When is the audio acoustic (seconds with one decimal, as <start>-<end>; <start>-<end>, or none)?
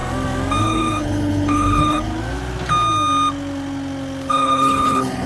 0.0-0.6; 2.1-4.3